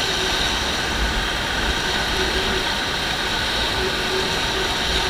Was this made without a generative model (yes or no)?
yes